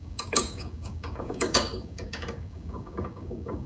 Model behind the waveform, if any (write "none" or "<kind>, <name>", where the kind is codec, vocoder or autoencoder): codec, DAC